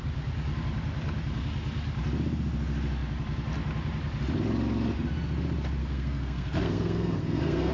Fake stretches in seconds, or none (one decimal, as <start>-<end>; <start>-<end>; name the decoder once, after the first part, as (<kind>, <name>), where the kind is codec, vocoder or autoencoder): 5.8-7.7 (codec, SNAC)

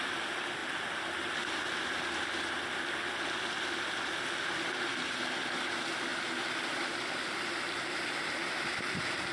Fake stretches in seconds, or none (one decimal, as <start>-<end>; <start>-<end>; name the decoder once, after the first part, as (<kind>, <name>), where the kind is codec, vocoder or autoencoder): none

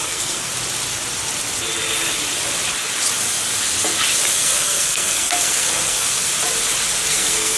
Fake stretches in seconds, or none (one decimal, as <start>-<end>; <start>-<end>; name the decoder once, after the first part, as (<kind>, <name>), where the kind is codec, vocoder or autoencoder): 0.0-0.5 (codec, SNAC); 4.3-6.3; 7.1-7.6

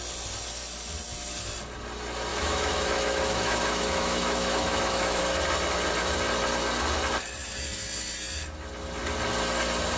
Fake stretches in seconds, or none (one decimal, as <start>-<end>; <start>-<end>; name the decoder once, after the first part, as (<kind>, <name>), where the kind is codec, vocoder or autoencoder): 2.3-5.2 (autoencoder, DAC-VAE)

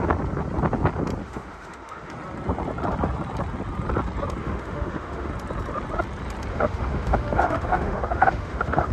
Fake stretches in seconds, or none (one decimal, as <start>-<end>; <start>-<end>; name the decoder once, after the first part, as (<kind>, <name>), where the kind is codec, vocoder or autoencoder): 1.2-2.1 (autoencoder, DAC-VAE); 4.4-5.3; 6.5-8.9

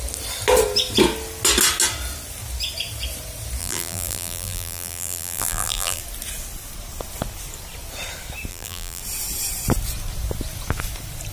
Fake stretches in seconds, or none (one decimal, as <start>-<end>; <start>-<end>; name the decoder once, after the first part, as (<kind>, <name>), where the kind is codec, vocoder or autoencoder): 3.6-6.0 (vocoder, BigVGAN v2); 8.5-9.0

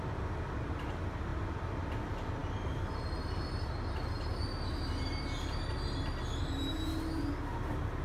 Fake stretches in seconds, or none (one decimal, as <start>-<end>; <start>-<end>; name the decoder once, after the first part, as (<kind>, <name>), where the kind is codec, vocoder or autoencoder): none

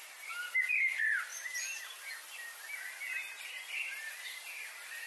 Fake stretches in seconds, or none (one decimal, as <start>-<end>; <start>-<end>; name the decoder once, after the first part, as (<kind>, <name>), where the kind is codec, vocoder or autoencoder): none